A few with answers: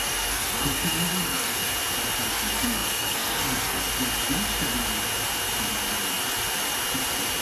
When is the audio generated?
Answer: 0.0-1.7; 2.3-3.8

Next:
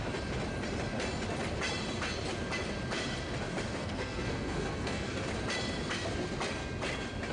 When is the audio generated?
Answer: 3.8-5.3

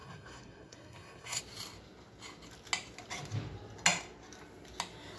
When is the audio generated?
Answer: 0.0-1.4

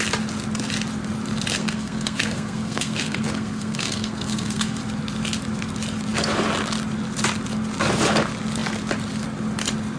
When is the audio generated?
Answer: 1.6-4.8

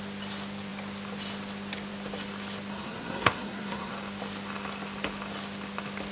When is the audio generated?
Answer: 2.7-3.9

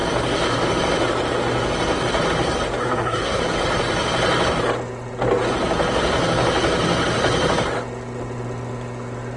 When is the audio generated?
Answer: 2.8-3.4

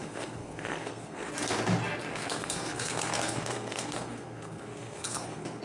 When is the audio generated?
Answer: 0.0-1.3; 2.1-5.6